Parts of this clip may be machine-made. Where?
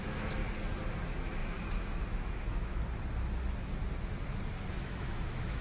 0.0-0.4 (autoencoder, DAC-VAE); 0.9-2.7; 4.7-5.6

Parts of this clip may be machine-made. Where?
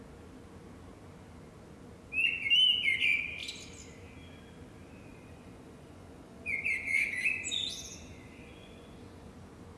5.1-9.3 (vocoder, Vocos)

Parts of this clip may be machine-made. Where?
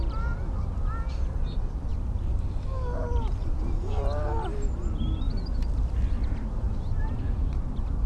none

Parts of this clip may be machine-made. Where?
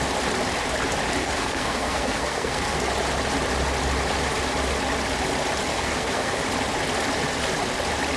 1.2-2.9 (codec, SNAC); 5.7-6.4